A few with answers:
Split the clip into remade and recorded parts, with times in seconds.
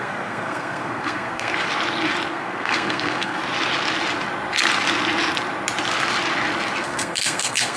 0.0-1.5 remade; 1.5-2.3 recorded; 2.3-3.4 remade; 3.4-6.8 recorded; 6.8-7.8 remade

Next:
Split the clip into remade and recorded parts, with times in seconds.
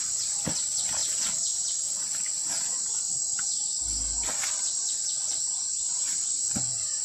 0.0-7.0 recorded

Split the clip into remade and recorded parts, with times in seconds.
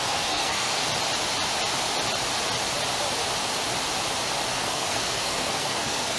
0.0-0.8 remade; 0.8-4.5 recorded; 4.5-6.2 remade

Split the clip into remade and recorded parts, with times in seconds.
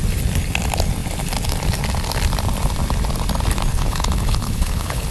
0.0-3.7 recorded; 3.7-5.1 remade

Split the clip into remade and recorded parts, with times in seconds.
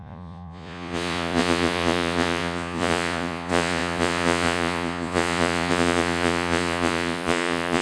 0.0-7.8 remade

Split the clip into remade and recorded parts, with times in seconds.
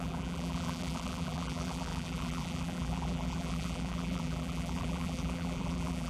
0.0-6.1 remade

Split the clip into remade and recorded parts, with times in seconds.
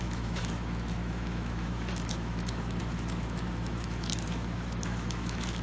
0.0-5.6 remade